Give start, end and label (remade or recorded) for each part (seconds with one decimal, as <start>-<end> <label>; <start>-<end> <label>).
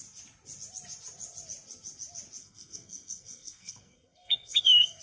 0.0-2.4 recorded; 2.4-5.0 remade